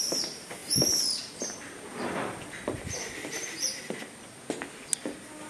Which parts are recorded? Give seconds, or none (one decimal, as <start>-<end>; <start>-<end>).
0.0-1.9; 4.0-5.5